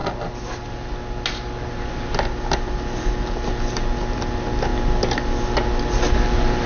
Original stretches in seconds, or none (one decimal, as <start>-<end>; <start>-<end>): 0.0-6.7